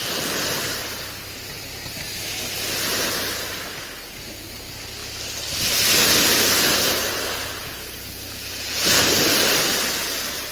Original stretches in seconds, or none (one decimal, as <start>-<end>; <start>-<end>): 0.0-7.6; 9.1-10.5